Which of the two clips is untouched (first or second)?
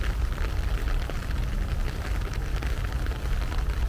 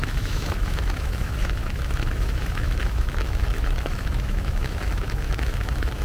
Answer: first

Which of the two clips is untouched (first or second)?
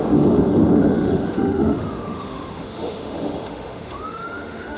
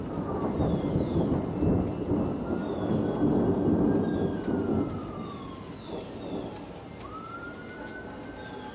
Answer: second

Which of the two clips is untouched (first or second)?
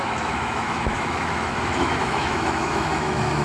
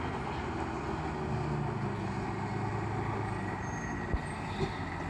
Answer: second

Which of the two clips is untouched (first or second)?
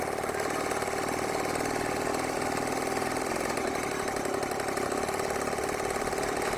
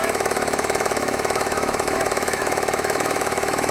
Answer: first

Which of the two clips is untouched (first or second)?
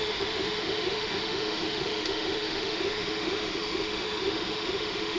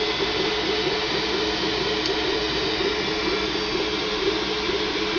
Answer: second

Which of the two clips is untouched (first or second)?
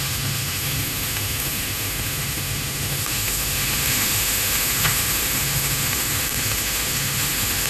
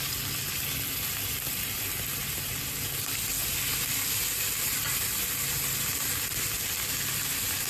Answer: second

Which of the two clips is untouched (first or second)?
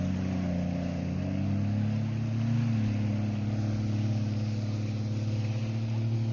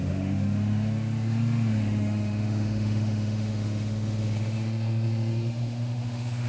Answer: first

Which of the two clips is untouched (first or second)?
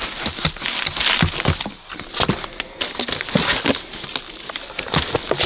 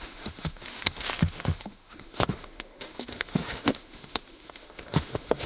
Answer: first